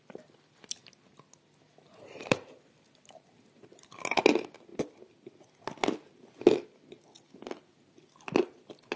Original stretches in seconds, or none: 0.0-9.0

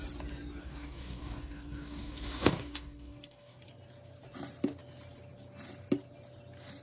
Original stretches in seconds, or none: 0.0-0.6; 3.6-6.8

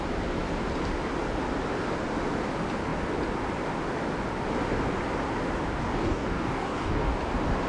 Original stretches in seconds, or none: 0.0-5.8; 7.2-7.7

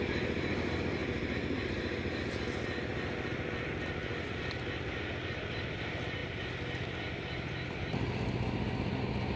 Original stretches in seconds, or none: 0.0-9.4

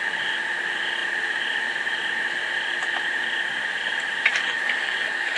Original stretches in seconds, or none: 0.0-4.3

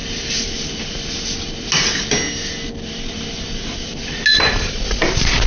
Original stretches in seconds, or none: 0.0-5.5

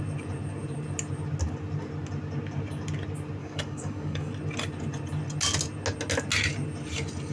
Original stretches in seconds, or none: 0.0-3.4; 4.3-7.3